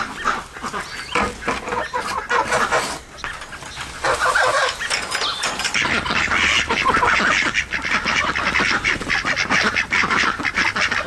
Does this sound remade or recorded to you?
recorded